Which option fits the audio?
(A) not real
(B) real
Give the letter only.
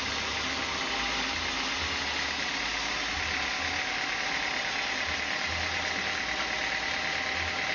B